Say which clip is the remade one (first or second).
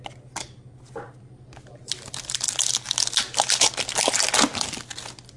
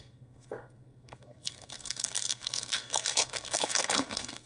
second